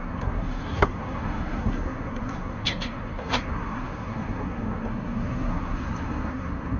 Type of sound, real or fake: fake